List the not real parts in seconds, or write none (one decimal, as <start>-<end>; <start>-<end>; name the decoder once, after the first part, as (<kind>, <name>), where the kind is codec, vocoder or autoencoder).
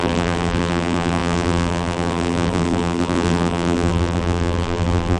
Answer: 0.0-5.2 (vocoder, BigVGAN v2)